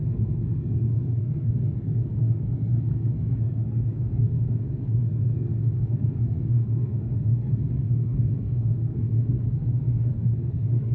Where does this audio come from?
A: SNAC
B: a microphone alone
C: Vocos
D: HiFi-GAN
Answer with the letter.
A